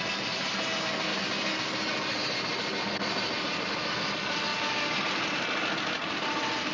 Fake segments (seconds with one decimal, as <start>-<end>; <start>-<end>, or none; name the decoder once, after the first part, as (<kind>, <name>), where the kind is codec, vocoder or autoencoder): none